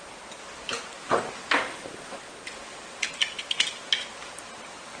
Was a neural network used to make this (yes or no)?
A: no